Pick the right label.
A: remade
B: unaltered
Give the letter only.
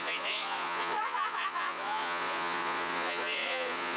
A